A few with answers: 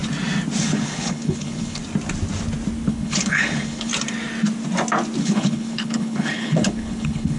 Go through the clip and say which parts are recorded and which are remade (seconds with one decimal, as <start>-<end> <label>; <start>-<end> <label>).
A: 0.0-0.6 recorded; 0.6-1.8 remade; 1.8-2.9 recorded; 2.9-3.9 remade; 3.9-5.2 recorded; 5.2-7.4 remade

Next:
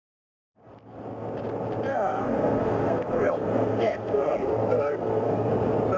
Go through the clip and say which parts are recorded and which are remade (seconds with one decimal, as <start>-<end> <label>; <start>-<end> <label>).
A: 0.0-1.9 recorded; 1.9-5.5 remade; 5.5-6.0 recorded

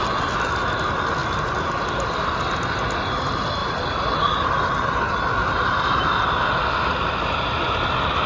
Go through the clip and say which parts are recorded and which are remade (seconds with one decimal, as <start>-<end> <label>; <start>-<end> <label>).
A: 0.0-1.2 recorded; 1.2-2.6 remade; 2.6-3.6 recorded; 3.6-6.9 remade; 6.9-8.3 recorded

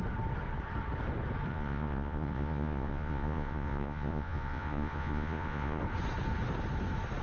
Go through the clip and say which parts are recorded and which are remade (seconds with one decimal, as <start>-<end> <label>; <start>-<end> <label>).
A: 0.0-1.5 recorded; 1.5-5.8 remade; 5.8-7.2 recorded

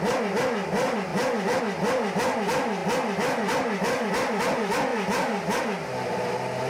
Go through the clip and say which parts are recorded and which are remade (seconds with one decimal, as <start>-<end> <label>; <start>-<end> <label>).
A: 0.0-1.1 recorded; 1.1-1.6 remade; 1.6-4.9 recorded; 4.9-5.6 remade; 5.6-6.7 recorded

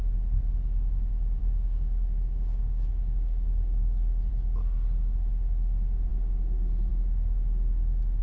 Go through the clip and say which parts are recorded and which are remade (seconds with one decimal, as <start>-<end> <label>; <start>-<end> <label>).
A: 0.0-1.4 recorded; 1.4-4.3 remade; 4.3-8.2 recorded